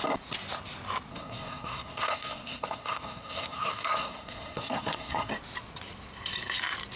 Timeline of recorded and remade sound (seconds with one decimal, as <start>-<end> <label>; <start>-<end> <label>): 0.0-1.1 recorded; 1.1-5.3 remade; 5.3-7.0 recorded